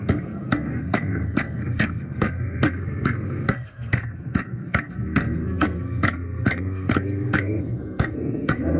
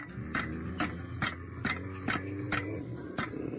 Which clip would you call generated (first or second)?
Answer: first